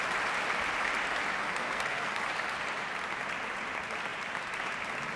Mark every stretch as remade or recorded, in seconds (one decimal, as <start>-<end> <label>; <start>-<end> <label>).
0.0-1.4 recorded; 1.4-2.2 remade; 2.2-5.2 recorded